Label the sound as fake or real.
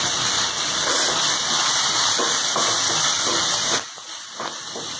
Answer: real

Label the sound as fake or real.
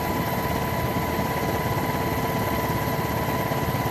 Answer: real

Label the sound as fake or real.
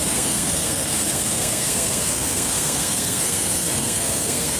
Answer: fake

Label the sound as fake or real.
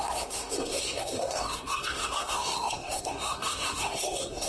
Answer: fake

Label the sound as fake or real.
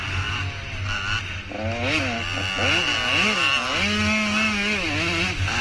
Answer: real